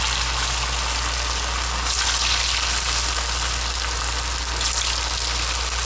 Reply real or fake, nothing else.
real